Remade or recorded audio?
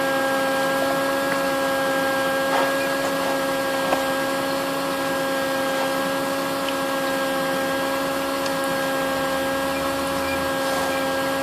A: recorded